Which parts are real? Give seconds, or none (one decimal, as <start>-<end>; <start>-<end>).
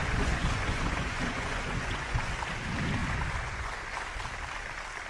2.3-3.0; 4.0-5.1